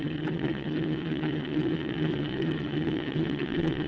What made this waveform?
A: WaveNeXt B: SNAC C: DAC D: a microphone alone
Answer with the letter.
A